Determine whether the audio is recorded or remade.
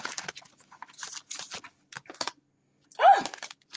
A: recorded